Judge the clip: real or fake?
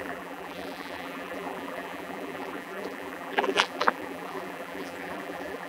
fake